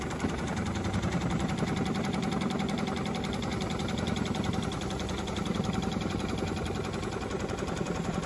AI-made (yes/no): yes